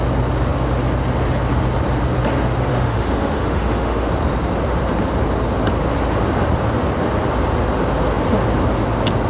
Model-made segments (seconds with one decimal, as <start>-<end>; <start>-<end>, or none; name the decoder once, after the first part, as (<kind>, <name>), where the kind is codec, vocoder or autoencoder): 2.7-4.1 (autoencoder, DAC-VAE)